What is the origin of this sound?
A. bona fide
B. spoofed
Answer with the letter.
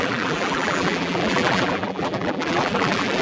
B